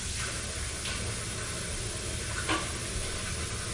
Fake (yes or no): no